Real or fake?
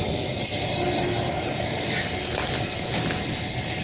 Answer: real